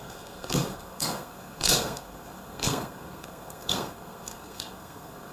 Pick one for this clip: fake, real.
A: fake